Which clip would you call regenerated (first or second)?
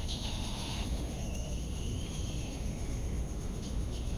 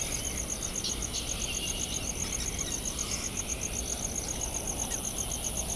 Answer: first